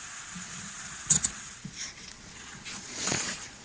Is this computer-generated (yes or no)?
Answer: yes